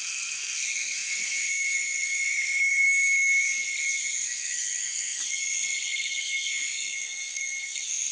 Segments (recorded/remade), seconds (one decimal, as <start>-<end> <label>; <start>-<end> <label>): 0.0-8.1 remade

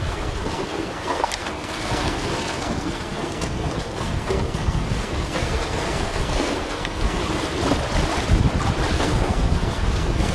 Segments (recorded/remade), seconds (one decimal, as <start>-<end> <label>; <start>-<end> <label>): 0.0-7.2 remade; 7.2-8.9 recorded; 8.9-10.3 remade

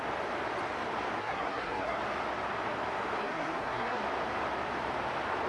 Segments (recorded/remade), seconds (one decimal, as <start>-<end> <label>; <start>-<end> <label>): 0.0-1.2 recorded; 1.2-2.0 remade; 2.0-3.2 recorded; 3.2-4.0 remade; 4.0-5.5 recorded